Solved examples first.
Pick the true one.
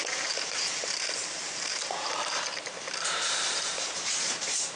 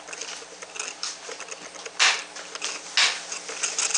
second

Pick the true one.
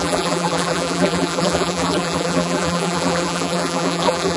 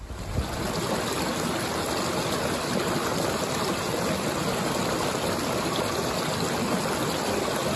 second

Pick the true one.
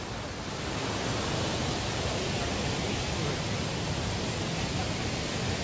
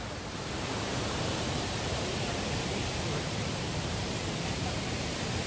first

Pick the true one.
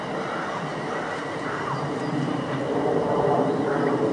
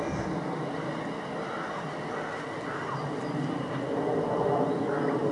second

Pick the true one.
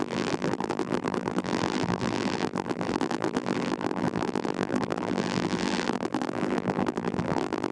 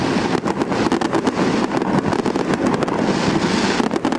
second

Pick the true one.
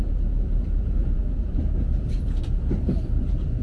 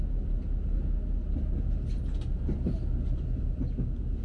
second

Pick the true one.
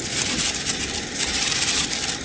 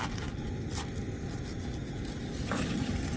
second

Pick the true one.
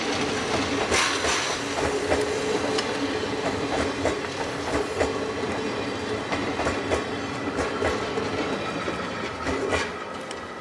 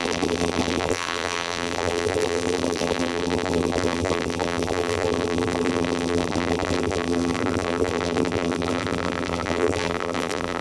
first